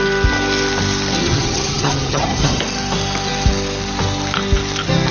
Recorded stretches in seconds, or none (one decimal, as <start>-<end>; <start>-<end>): 0.0-1.2; 2.6-5.1